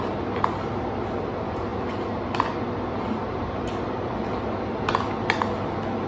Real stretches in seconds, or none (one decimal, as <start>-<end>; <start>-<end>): 0.0-6.1